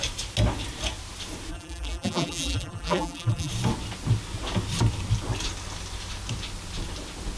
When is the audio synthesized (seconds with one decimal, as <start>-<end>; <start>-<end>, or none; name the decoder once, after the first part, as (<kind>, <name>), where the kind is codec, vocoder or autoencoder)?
1.5-3.5 (vocoder, BigVGAN v2)